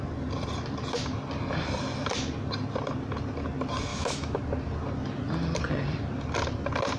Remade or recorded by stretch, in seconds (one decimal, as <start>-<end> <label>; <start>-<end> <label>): 0.0-3.9 recorded; 3.9-4.4 remade; 4.4-7.0 recorded